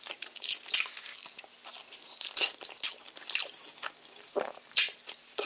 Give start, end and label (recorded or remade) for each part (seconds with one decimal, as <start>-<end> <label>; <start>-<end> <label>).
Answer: 0.0-5.5 recorded